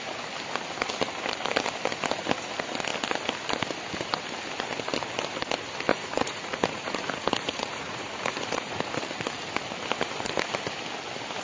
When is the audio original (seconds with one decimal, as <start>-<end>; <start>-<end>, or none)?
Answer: 0.0-5.9; 9.0-11.4